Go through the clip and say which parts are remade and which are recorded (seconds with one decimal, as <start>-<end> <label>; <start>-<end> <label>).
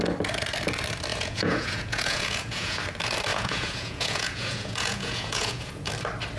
0.0-1.1 recorded; 1.1-2.8 remade; 2.8-3.3 recorded; 3.3-5.9 remade; 5.9-6.4 recorded